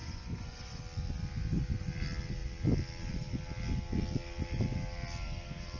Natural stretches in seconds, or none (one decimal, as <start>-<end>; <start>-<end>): 0.8-5.8